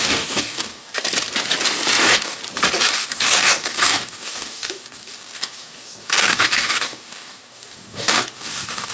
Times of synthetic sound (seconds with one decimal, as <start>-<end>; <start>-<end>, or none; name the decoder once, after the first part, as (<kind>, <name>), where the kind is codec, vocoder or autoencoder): 0.0-0.9 (codec, DAC); 2.0-2.4; 2.9-8.9